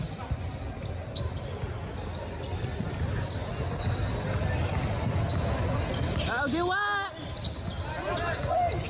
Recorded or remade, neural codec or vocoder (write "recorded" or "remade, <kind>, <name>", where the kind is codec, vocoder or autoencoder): recorded